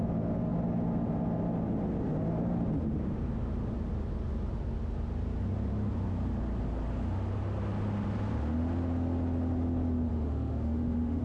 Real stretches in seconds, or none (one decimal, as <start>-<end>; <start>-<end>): 0.0-10.1